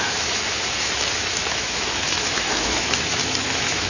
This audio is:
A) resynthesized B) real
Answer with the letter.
A